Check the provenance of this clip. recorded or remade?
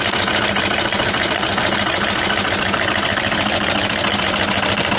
recorded